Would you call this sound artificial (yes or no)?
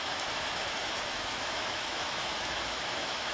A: yes